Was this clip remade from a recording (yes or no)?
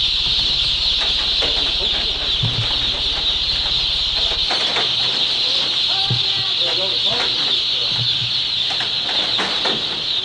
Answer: no